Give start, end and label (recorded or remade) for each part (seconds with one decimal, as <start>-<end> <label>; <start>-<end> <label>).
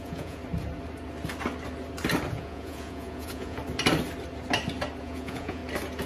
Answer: 0.0-0.4 remade; 0.4-2.3 recorded; 2.3-3.6 remade; 3.6-5.0 recorded; 5.0-5.6 remade; 5.6-6.1 recorded